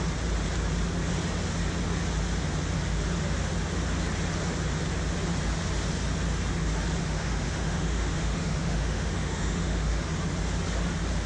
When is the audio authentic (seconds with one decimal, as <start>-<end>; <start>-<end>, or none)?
0.0-7.0; 10.1-11.3